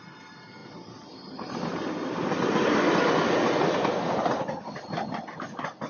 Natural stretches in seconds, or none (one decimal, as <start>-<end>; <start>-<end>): 0.0-5.9